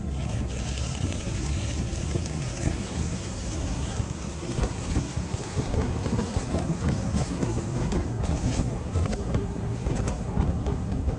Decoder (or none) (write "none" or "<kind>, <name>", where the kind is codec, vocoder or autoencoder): codec, SNAC